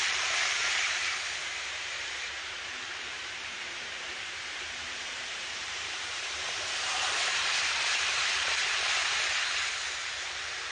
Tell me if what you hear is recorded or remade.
remade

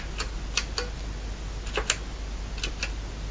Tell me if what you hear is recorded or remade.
recorded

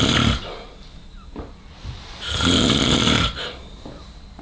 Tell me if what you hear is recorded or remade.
remade